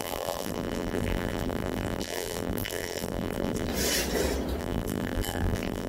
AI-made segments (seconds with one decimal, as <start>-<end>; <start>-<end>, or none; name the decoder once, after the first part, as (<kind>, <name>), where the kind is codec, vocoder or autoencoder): 0.0-3.7 (vocoder, BigVGAN v2); 4.6-5.9